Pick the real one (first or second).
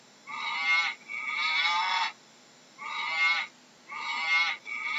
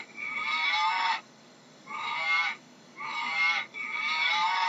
first